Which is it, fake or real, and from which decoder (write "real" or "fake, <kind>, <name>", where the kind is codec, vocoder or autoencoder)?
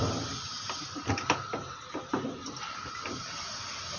real